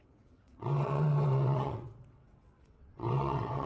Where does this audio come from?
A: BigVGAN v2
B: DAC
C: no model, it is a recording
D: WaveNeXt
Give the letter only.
D